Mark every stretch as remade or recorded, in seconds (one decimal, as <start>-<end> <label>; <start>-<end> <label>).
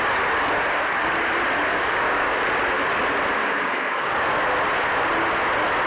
0.0-1.7 recorded; 1.7-2.4 remade; 2.4-3.4 recorded; 3.4-4.1 remade; 4.1-5.9 recorded